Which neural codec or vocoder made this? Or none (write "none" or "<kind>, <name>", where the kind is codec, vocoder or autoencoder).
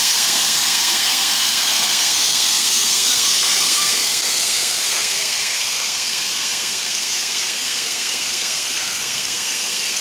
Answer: codec, SNAC